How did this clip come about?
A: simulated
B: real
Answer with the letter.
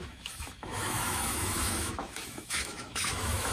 A